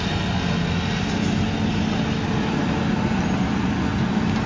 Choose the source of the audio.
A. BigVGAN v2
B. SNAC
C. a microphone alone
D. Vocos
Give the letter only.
C